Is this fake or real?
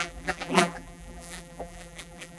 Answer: fake